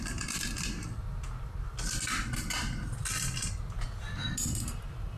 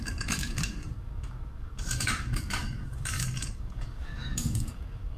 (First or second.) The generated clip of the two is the second